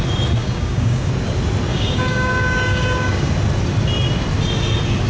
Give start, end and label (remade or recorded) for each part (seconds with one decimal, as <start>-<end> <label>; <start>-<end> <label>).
0.0-0.4 recorded; 0.4-1.1 remade; 1.1-1.7 recorded; 1.7-3.3 remade; 3.3-5.1 recorded